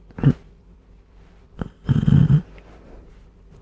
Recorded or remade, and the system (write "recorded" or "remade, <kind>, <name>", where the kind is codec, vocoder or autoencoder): remade, vocoder, BigVGAN v2